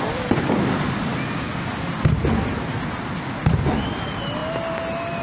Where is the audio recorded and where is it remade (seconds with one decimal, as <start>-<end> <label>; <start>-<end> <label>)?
0.0-1.1 remade; 1.1-3.7 recorded; 3.7-4.4 remade; 4.4-5.2 recorded